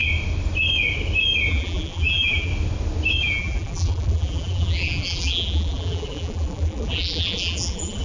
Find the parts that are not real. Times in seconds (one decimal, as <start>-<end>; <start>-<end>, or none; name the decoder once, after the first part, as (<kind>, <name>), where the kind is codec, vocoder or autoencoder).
1.5-2.5 (vocoder, BigVGAN v2); 3.2-8.0